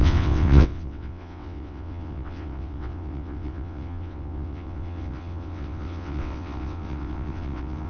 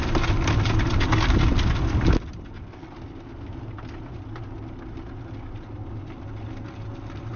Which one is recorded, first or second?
second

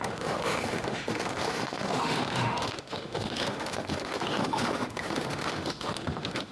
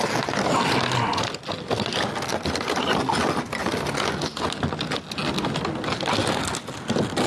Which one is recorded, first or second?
second